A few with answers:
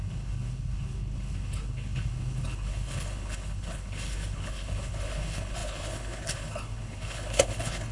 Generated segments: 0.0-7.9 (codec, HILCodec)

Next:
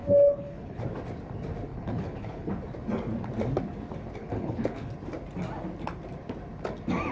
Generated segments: 0.0-0.8 (codec, HILCodec); 1.7-2.5; 4.2-4.9

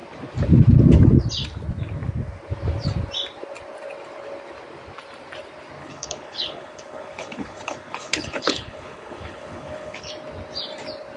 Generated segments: 5.8-10.1 (codec, HILCodec)

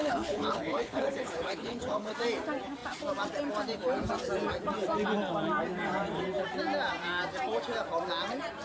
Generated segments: 0.0-2.1 (codec, HILCodec)

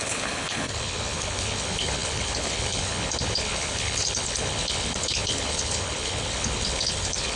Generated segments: 0.0-7.4 (codec, HILCodec)

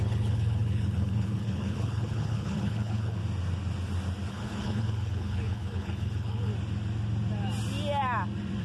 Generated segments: 0.0-3.2 (codec, HILCodec); 4.3-6.5

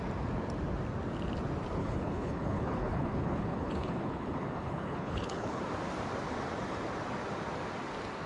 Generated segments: 1.8-5.6 (codec, HILCodec)